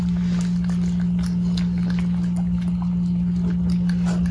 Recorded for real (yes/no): yes